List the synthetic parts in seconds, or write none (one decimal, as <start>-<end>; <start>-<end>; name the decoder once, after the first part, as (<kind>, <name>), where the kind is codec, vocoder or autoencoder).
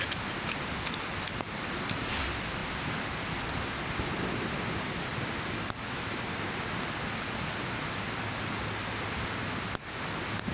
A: none